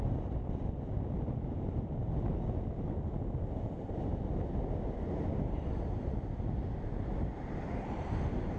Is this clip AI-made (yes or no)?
no